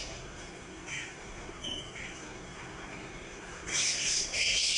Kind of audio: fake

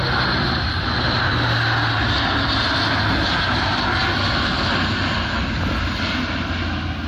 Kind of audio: real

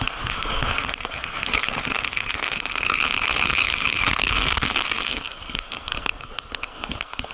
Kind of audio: fake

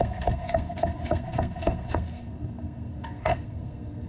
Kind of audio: fake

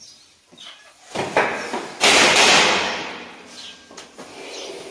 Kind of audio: real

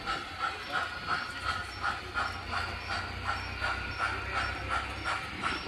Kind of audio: real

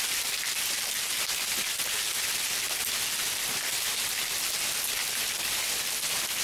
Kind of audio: real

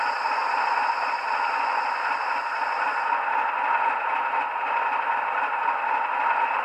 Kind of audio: real